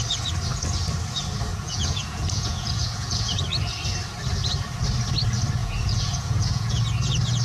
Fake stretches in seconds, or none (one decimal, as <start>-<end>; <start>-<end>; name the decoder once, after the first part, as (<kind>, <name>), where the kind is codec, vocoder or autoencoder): 1.5-3.4 (vocoder, Vocos); 5.6-6.8